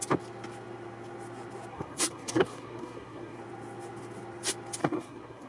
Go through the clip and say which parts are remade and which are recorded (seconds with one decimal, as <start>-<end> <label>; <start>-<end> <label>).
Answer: 0.0-1.7 recorded; 1.7-3.4 remade; 3.4-4.8 recorded; 4.8-5.5 remade

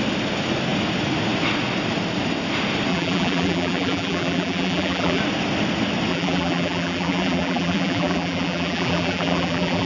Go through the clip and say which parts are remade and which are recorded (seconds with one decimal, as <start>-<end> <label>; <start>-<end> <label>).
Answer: 0.0-2.9 recorded; 2.9-5.2 remade; 5.2-6.1 recorded; 6.1-9.9 remade

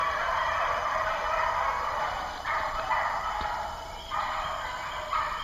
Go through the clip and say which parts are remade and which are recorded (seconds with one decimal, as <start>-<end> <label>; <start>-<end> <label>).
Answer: 0.0-3.2 remade; 3.2-5.4 recorded

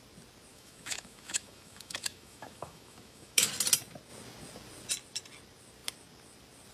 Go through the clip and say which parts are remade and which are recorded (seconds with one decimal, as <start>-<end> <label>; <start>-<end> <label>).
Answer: 0.0-0.5 recorded; 0.5-3.5 remade; 3.5-6.7 recorded

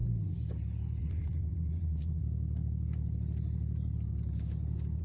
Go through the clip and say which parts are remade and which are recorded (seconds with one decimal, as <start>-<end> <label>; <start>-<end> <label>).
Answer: 0.0-1.0 recorded; 1.0-2.2 remade; 2.2-5.0 recorded

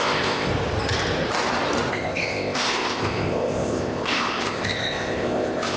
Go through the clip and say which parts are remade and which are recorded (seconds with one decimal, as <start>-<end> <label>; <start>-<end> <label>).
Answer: 0.0-0.5 remade; 0.5-1.9 recorded; 1.9-5.8 remade

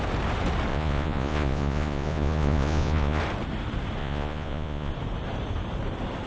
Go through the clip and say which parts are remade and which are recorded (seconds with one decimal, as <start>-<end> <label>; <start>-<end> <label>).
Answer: 0.0-0.7 recorded; 0.7-3.2 remade; 3.2-4.0 recorded; 4.0-4.9 remade; 4.9-6.3 recorded

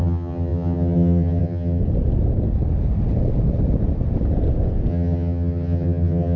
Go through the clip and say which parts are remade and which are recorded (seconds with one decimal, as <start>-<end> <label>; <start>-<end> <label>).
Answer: 0.0-1.8 remade; 1.8-4.9 recorded; 4.9-6.4 remade